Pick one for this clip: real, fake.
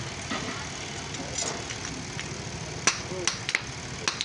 real